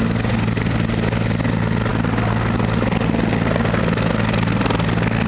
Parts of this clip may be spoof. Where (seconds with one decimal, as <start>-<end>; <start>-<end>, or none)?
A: none